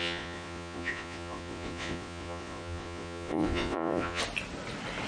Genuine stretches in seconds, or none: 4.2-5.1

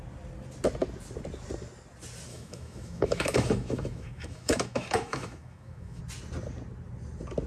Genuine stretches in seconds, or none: 0.0-2.3; 6.0-7.5

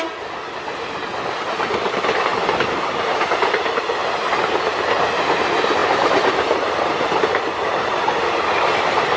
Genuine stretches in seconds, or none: 0.0-2.3; 3.3-5.8; 8.4-9.2

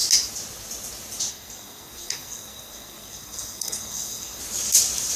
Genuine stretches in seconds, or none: 0.0-1.3; 4.4-5.2

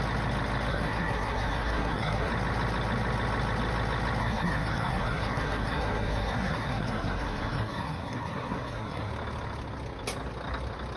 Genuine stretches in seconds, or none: 0.0-0.7; 2.3-4.2; 9.1-11.0

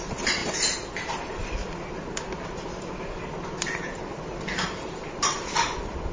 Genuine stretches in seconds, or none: 0.0-6.1